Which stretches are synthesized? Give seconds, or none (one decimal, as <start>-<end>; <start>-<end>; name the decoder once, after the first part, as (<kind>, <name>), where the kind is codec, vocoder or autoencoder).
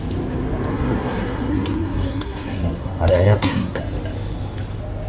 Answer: 0.7-3.8 (codec, SNAC)